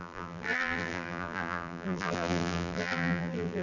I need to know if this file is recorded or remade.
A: remade